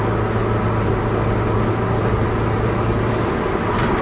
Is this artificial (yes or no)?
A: no